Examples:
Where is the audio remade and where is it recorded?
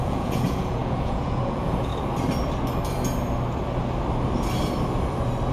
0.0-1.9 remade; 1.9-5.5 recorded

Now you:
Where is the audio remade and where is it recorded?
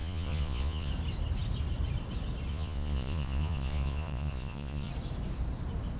0.0-0.9 remade; 0.9-2.5 recorded; 2.5-4.9 remade; 4.9-6.0 recorded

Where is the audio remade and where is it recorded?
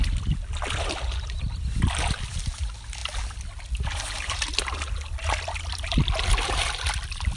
0.0-7.4 recorded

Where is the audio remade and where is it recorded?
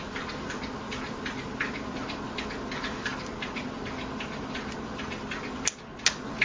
0.0-6.4 recorded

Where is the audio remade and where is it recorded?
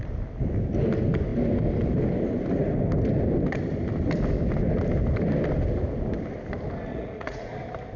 0.0-6.9 recorded; 6.9-7.5 remade; 7.5-8.0 recorded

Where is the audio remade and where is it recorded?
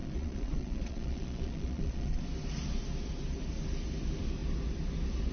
0.0-2.2 remade; 2.2-5.3 recorded